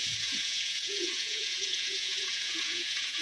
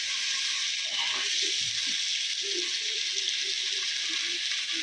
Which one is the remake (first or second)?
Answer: first